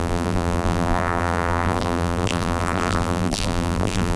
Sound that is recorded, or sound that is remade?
remade